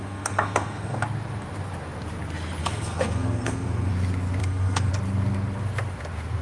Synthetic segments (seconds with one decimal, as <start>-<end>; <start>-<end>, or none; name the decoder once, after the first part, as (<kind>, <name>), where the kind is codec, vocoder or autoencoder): 0.0-1.0 (codec, SNAC); 2.6-3.9; 4.4-4.9